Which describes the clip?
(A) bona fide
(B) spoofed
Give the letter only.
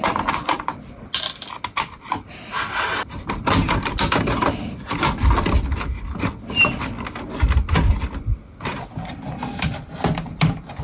A